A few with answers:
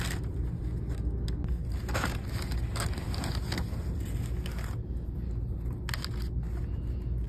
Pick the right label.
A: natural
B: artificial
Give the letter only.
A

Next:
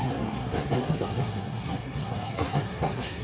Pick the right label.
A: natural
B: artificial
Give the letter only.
B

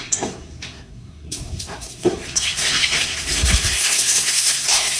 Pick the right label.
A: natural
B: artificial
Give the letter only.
B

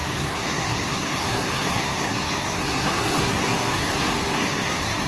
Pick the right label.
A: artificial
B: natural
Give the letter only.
A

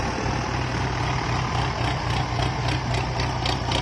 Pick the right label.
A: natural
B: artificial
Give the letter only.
A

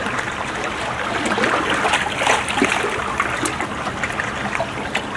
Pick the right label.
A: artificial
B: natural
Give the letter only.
B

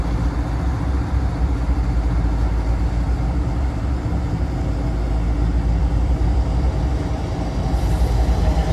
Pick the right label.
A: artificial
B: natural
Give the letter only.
B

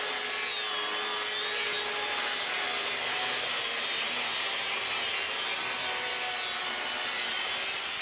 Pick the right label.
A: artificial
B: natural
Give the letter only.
B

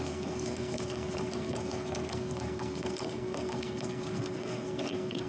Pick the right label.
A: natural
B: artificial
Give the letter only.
B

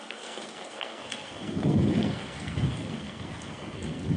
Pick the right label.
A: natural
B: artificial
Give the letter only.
B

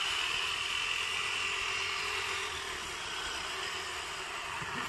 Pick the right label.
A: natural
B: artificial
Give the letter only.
A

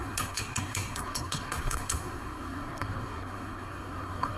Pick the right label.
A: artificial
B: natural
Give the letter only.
A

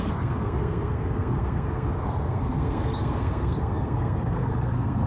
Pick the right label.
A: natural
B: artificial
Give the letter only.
B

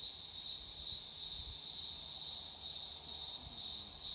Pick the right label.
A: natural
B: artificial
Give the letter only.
A